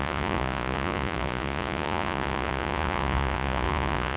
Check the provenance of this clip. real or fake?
fake